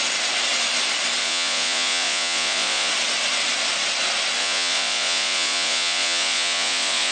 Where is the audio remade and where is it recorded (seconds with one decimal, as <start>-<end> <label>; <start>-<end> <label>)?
0.0-1.2 recorded; 1.2-2.9 remade; 2.9-4.4 recorded; 4.4-7.1 remade

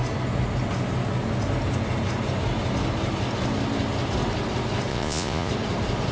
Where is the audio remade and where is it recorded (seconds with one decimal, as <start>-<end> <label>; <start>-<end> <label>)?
0.0-4.9 recorded; 4.9-5.5 remade; 5.5-6.1 recorded

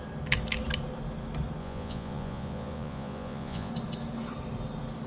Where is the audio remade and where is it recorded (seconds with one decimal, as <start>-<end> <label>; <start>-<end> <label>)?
0.0-1.6 recorded; 1.6-3.7 remade; 3.7-5.1 recorded

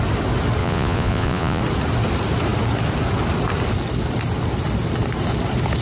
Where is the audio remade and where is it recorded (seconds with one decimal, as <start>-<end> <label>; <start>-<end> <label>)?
0.0-0.6 recorded; 0.6-1.6 remade; 1.6-5.8 recorded

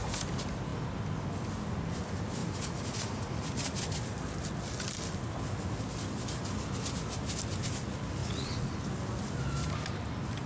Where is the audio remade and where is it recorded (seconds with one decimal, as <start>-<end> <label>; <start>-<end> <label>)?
0.0-2.4 recorded; 2.4-3.8 remade; 3.8-8.2 recorded; 8.2-8.8 remade; 8.8-10.5 recorded

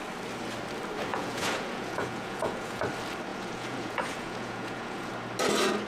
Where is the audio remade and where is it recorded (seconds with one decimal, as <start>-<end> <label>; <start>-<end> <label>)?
0.0-1.1 recorded; 1.1-2.8 remade; 2.8-3.3 recorded; 3.3-5.1 remade; 5.1-5.9 recorded

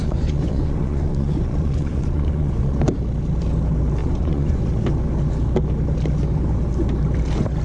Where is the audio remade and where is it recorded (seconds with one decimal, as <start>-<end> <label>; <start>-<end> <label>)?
0.0-2.9 remade; 2.9-4.0 recorded; 4.0-4.6 remade; 4.6-7.6 recorded